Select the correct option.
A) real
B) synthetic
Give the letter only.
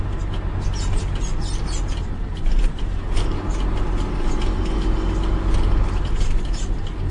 A